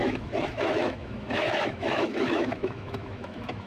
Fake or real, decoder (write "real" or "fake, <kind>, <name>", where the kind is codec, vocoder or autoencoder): fake, autoencoder, DAC-VAE